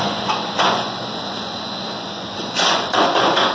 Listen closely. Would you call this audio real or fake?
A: fake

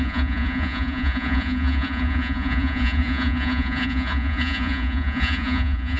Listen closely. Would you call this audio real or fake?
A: fake